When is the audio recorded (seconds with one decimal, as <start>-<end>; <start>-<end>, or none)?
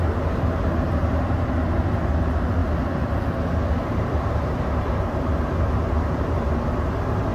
0.0-7.3